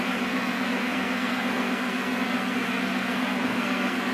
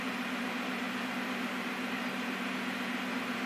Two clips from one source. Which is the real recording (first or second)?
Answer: second